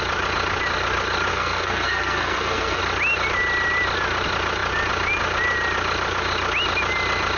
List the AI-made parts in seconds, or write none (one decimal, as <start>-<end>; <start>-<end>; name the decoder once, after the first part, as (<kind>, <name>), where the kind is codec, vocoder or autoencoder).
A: 1.3-2.8 (codec, SNAC)